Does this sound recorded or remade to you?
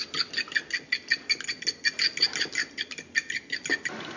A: recorded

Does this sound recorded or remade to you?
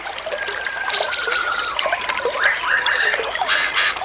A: remade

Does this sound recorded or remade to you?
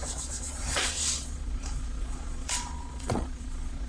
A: remade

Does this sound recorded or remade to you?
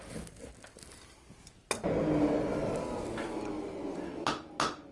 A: recorded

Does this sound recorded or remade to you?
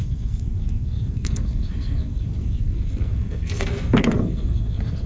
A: remade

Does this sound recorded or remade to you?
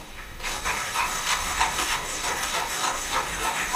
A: remade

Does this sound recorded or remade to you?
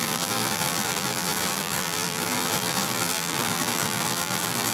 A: remade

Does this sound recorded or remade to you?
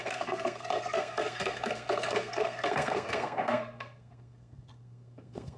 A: remade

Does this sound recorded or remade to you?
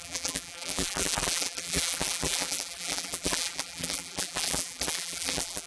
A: remade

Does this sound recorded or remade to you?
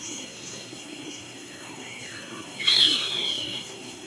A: remade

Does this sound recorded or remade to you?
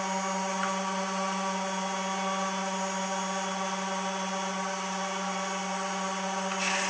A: recorded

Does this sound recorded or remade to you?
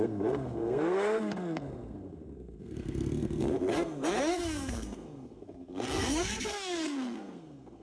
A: remade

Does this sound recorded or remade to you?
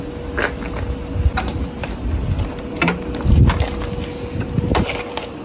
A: recorded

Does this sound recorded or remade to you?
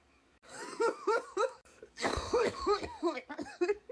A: remade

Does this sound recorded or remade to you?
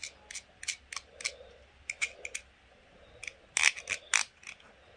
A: recorded